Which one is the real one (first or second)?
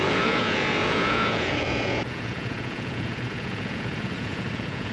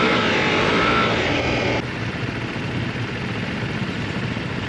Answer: second